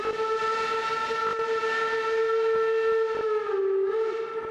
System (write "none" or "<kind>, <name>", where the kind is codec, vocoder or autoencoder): none